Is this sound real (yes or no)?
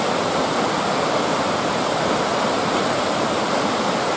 yes